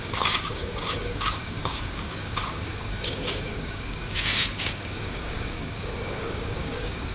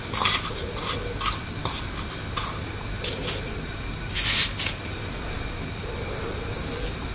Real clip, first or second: second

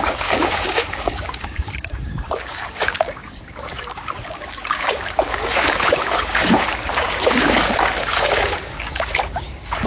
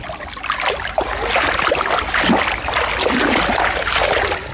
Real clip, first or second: second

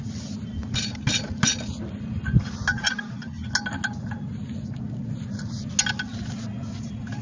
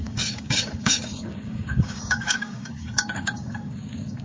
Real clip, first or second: first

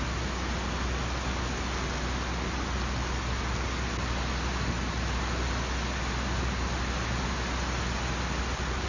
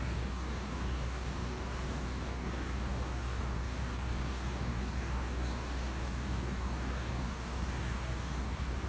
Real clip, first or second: first